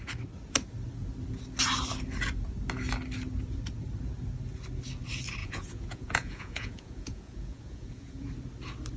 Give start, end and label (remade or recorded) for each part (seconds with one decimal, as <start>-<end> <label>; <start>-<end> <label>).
0.0-5.4 recorded; 5.4-8.3 remade; 8.3-9.0 recorded